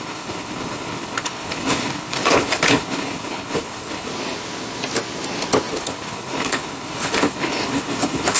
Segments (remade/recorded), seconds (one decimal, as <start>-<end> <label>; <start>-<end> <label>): 0.0-4.1 remade; 4.1-5.7 recorded; 5.7-8.4 remade